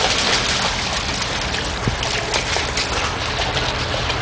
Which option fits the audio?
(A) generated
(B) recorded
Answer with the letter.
B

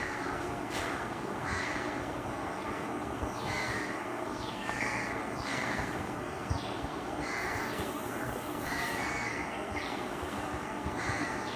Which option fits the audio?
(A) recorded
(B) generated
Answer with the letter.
B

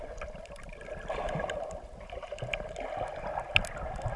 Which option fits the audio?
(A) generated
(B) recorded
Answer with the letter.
B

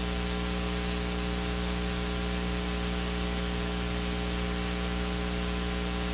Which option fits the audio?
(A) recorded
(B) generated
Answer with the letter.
A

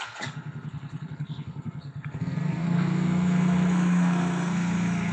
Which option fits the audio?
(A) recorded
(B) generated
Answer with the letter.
B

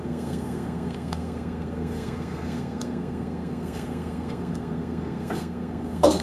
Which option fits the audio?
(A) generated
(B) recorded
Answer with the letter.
A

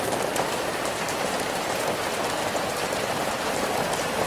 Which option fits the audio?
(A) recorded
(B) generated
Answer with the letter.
A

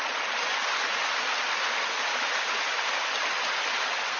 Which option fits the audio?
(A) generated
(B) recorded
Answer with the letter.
B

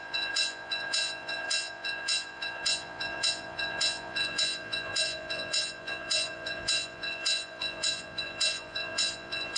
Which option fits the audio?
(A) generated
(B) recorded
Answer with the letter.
A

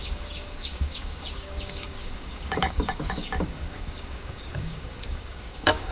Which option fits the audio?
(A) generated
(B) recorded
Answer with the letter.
A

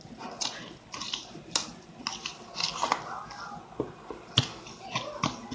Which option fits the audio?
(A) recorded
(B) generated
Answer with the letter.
A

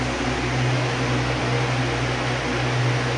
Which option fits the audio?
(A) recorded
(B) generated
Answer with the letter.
A